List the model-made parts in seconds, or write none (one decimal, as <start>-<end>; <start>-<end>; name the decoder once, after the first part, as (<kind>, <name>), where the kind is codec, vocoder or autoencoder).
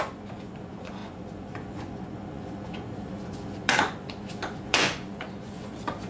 0.0-6.1 (vocoder, Vocos)